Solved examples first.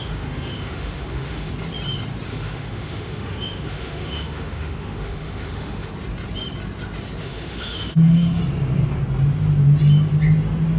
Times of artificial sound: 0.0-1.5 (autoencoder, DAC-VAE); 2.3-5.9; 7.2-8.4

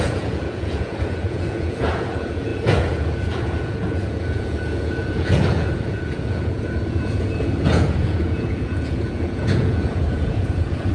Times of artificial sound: 0.0-10.9 (vocoder, Vocos)

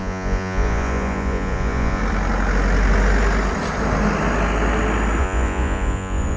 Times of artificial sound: 0.0-2.0 (vocoder, Vocos); 5.2-6.4

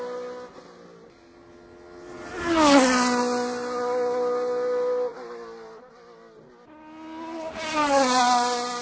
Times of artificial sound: none

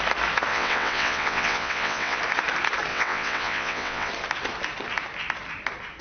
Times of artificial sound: 0.5-2.2 (vocoder, WaveNeXt); 2.9-4.1

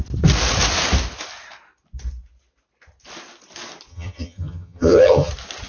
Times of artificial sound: 3.9-5.3 (vocoder, HiFi-GAN)

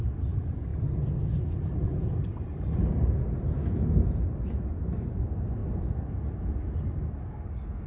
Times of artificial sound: none

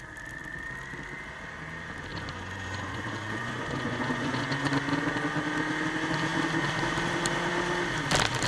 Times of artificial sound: 2.1-4.7 (vocoder, Vocos)